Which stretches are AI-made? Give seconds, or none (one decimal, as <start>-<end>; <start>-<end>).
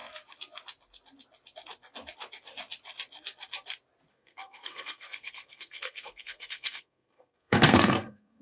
4.1-8.4